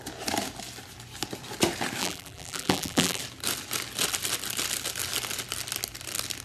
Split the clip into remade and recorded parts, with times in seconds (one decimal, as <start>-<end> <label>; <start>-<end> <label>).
0.0-2.0 recorded; 2.0-3.2 remade; 3.2-6.4 recorded

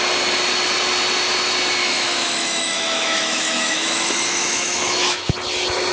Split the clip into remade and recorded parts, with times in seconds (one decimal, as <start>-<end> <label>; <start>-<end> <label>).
0.0-1.8 recorded; 1.8-5.3 remade; 5.3-5.9 recorded

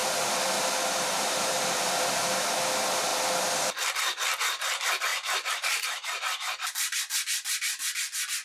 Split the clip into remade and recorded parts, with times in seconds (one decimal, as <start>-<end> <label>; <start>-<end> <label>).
0.0-2.6 remade; 2.6-5.1 recorded; 5.1-6.2 remade; 6.2-8.4 recorded

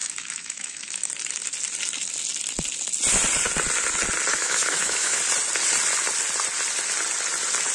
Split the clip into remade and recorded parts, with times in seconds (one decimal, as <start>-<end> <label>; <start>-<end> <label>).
0.0-1.1 remade; 1.1-4.3 recorded; 4.3-5.2 remade; 5.2-7.7 recorded

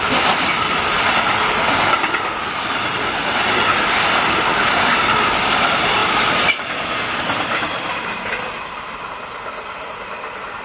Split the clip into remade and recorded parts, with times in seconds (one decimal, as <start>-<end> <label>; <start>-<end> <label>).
0.0-10.6 recorded

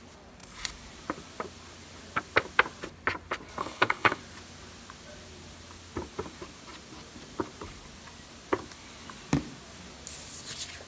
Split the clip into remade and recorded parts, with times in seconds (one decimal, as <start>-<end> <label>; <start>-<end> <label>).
0.0-3.6 recorded; 3.6-4.2 remade; 4.2-10.9 recorded